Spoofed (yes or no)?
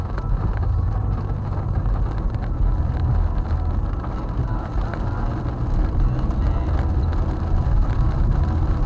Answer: no